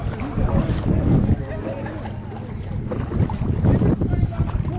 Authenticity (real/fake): real